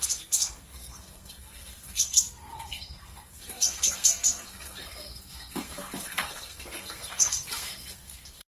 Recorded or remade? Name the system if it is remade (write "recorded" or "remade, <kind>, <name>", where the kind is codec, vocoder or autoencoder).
remade, codec, SNAC